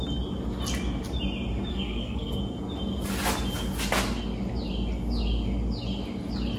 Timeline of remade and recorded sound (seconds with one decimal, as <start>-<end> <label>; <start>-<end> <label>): 0.0-1.7 recorded; 1.7-2.4 remade; 2.4-6.6 recorded